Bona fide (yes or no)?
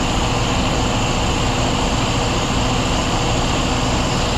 yes